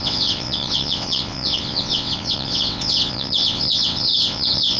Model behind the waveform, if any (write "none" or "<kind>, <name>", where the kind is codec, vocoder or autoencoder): vocoder, WaveNeXt